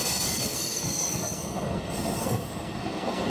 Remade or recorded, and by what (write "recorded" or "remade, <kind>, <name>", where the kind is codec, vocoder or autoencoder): remade, codec, SNAC